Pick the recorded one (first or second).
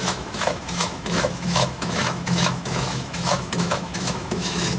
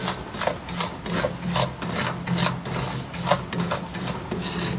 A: second